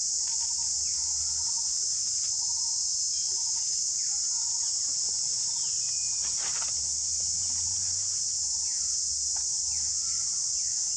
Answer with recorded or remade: recorded